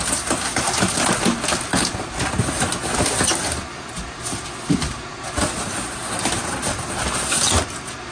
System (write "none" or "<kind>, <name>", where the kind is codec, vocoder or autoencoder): none